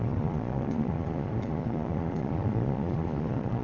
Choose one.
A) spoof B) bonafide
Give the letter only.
A